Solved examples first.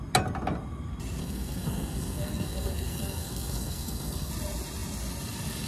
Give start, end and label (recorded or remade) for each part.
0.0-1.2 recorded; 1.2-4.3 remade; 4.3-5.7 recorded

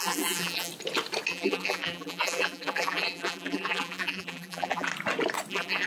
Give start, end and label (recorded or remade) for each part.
0.0-0.7 remade; 0.7-1.3 recorded; 1.3-4.9 remade; 4.9-5.5 recorded; 5.5-5.9 remade

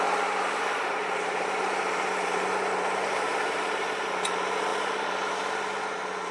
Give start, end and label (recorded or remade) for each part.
0.0-6.3 remade

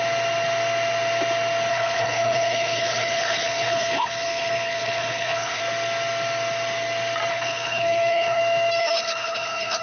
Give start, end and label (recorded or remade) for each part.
0.0-1.7 recorded; 1.7-5.6 remade; 5.6-7.3 recorded; 7.3-8.4 remade; 8.4-8.8 recorded; 8.8-9.8 remade

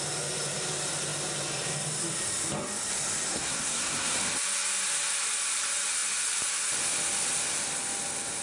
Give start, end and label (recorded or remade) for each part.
0.0-3.3 recorded; 3.3-4.2 remade; 4.2-8.4 recorded